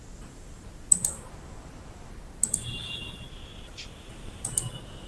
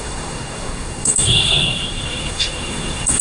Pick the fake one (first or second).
second